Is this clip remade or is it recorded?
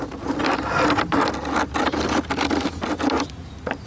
recorded